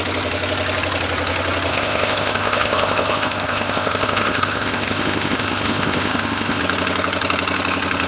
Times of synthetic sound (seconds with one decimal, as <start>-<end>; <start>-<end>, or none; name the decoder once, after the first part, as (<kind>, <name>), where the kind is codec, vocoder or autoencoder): 1.7-6.6 (codec, ZipCodec)